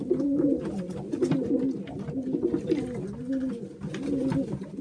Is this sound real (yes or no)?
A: yes